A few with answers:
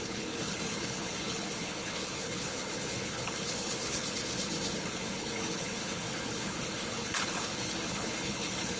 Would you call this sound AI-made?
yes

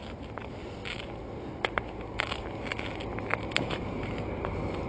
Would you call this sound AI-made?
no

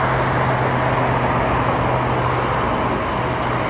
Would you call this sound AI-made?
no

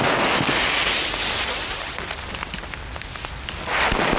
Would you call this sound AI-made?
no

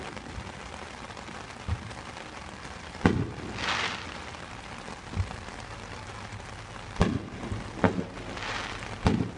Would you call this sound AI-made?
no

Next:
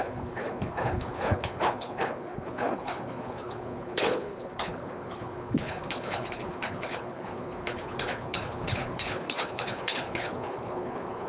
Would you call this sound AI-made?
yes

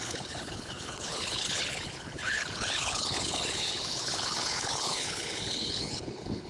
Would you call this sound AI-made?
yes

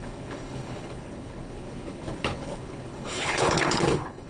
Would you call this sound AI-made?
yes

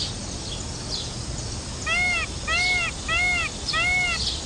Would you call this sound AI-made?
no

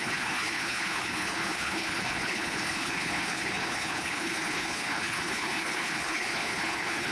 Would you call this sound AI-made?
yes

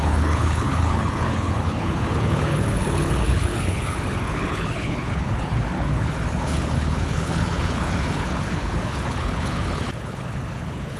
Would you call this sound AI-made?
yes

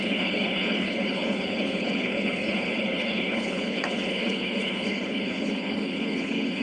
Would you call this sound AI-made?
yes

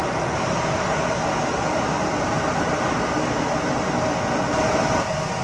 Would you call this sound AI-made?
no